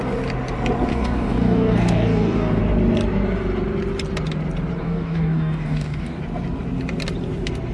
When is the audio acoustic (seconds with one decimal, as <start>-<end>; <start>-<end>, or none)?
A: 0.0-0.9; 2.6-4.8; 6.2-7.7